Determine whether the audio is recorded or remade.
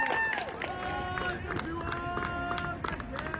recorded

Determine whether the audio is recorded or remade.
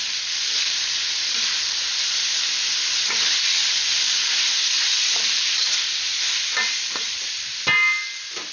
recorded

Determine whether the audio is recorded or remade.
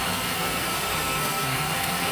remade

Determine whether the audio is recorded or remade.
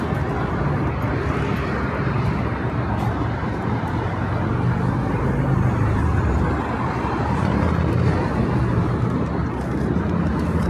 recorded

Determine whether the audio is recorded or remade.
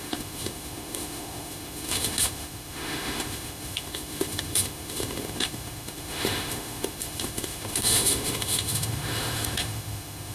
remade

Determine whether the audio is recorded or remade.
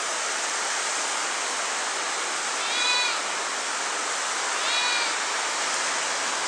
recorded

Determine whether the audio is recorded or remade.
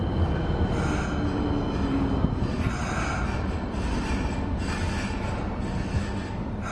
recorded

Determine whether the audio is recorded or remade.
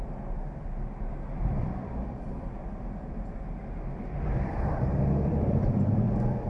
remade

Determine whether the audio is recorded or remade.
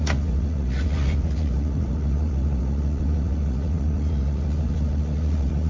remade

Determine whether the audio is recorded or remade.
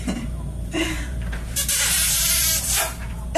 remade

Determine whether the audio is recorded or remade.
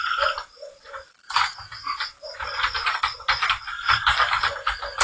recorded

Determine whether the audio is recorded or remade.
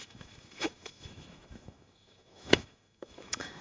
remade